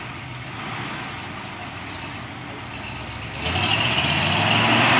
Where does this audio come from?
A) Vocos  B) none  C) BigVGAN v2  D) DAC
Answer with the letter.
B